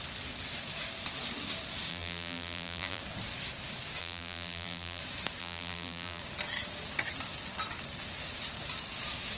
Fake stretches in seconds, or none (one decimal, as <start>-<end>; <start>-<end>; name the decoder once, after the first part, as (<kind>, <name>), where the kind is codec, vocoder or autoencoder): 1.9-3.0 (vocoder, BigVGAN v2); 4.0-5.0; 5.4-6.2

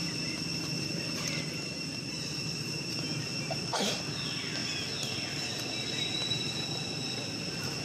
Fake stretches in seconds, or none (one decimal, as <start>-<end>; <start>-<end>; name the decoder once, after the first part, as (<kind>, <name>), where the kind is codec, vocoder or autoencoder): 0.0-4.0 (vocoder, BigVGAN v2)

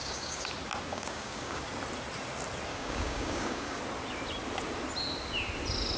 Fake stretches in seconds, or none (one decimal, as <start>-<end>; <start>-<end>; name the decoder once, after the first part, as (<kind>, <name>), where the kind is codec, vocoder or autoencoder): 0.0-0.5 (codec, DAC); 0.9-1.6; 2.7-3.8

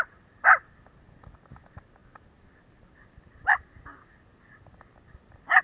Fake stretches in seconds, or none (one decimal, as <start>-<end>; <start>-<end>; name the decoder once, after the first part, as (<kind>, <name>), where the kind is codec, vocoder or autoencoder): none

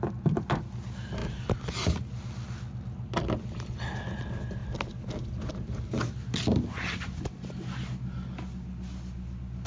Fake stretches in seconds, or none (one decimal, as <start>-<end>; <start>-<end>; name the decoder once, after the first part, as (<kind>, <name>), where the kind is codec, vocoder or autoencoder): none

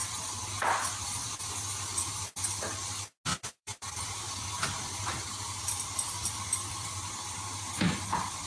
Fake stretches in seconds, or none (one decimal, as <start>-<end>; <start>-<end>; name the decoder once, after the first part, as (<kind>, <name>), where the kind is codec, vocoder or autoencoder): 0.0-1.4 (vocoder, BigVGAN v2); 3.3-8.5

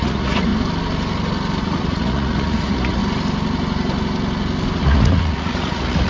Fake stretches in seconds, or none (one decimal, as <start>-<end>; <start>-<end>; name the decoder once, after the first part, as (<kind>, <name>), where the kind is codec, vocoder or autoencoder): 0.0-0.5 (vocoder, Vocos); 1.6-3.0; 4.8-6.1